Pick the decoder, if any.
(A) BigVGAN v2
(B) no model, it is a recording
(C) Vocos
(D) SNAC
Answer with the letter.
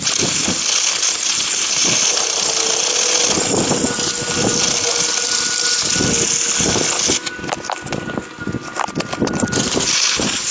B